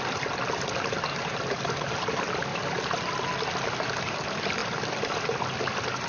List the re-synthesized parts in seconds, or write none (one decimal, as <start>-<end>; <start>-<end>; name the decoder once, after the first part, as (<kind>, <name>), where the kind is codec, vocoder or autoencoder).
1.1-1.9 (vocoder, BigVGAN v2)